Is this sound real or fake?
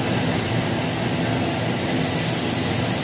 real